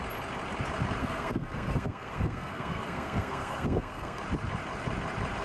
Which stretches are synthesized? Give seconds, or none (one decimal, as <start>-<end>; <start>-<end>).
1.0-4.2